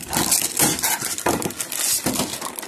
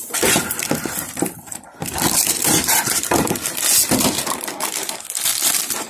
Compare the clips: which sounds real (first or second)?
first